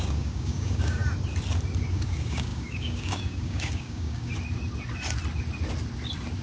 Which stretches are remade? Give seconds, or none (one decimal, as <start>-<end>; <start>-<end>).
0.0-1.0; 1.9-4.3